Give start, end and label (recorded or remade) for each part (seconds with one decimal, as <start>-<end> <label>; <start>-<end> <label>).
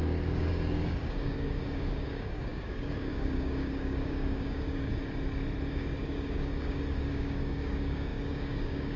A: 0.0-4.9 remade; 4.9-5.7 recorded; 5.7-9.0 remade